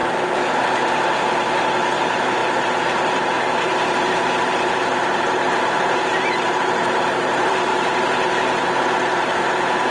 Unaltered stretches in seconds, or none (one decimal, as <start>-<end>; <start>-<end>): 0.0-0.6; 7.7-9.5